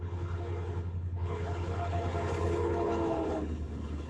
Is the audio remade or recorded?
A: remade